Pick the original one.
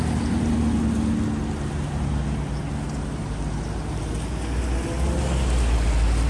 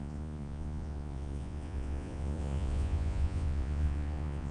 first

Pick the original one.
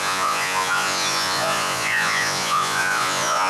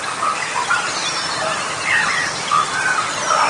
second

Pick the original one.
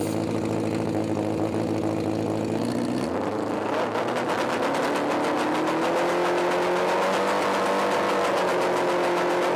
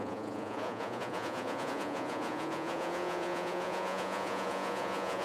first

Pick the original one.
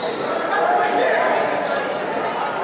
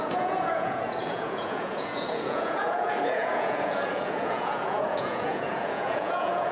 first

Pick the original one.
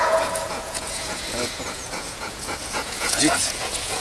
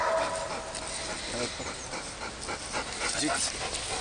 second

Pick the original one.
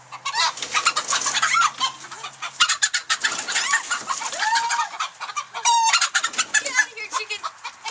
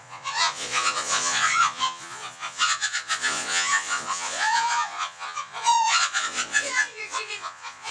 first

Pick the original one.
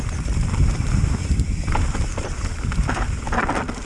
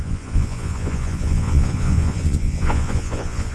first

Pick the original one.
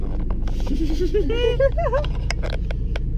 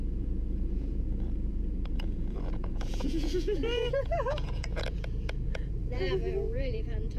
first